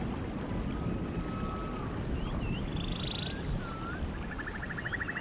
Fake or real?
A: real